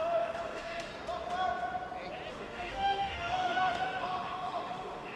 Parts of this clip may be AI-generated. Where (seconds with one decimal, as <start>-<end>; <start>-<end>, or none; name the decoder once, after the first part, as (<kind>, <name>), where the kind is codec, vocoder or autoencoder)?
0.0-0.9 (autoencoder, DAC-VAE); 2.3-5.2